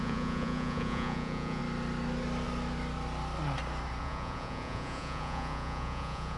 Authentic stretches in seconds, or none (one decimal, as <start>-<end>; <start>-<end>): 1.6-4.0